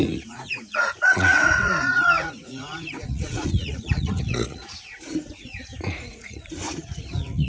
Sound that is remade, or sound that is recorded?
remade